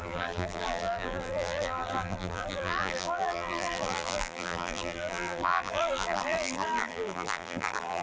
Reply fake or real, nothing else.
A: fake